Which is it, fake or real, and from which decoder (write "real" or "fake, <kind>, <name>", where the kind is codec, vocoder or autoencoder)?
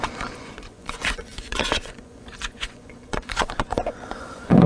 fake, vocoder, Vocos